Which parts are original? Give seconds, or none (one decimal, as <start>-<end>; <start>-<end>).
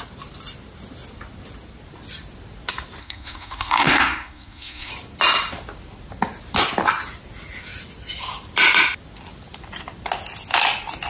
0.0-3.0; 4.9-11.1